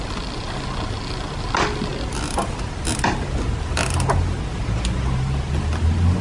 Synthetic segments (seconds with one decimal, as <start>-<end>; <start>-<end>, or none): none